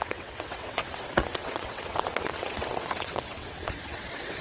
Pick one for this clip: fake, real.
fake